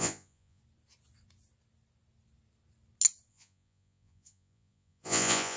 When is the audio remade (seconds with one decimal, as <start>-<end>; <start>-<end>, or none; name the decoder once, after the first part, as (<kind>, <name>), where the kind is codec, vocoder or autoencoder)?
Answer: 0.0-0.6 (vocoder, Vocos); 3.3-5.6

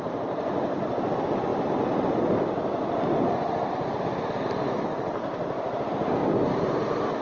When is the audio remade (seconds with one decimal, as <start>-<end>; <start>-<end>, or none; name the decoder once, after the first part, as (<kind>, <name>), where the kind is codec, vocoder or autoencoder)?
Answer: none